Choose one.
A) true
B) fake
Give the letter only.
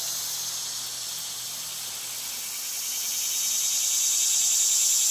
A